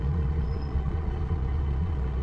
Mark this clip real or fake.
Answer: fake